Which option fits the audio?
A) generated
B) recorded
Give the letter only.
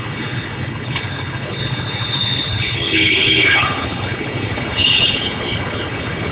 A